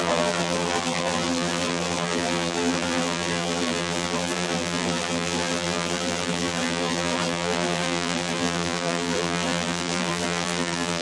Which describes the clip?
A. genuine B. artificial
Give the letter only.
B